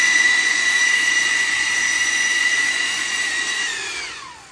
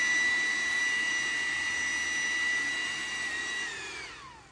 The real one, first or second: second